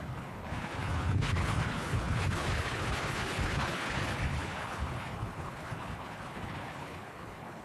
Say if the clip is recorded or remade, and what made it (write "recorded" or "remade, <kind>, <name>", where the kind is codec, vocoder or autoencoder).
remade, codec, HILCodec